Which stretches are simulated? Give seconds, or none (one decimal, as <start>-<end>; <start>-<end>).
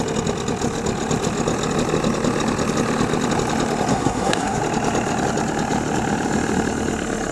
3.9-4.6